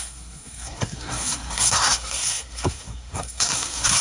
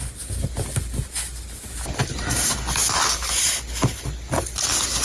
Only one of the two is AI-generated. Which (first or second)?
first